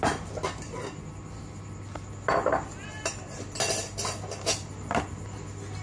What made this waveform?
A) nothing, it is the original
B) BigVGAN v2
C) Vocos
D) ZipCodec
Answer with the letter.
A